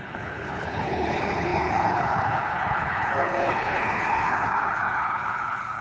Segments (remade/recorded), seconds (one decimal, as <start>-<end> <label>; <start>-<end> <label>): 0.0-5.8 remade